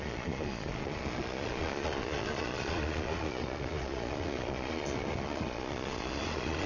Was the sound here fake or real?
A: fake